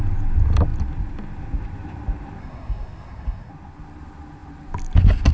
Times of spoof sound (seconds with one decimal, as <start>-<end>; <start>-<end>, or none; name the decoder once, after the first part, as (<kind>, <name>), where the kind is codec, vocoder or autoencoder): 2.4-3.5 (codec, SNAC)